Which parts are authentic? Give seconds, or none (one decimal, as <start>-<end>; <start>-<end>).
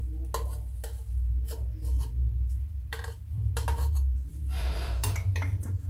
0.0-2.9